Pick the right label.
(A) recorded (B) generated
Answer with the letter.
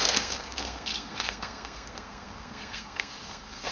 B